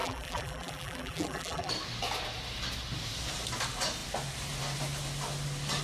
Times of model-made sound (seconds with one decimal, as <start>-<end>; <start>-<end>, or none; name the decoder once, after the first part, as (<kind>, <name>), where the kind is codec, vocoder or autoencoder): 0.0-1.7 (vocoder, BigVGAN v2)